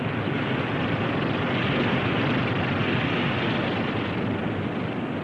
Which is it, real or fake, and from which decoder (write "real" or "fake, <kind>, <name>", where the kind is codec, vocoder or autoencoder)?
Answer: real